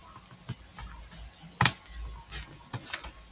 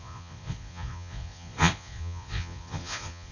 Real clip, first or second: first